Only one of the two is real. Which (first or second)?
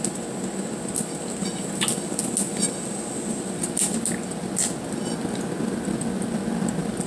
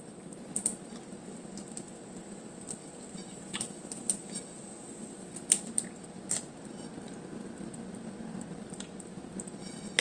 first